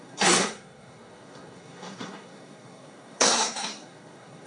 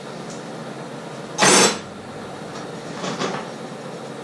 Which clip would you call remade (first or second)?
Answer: first